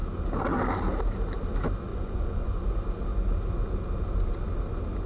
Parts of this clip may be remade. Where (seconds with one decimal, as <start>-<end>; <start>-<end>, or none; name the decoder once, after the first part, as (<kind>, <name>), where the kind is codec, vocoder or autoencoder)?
1.9-2.5 (vocoder, Vocos)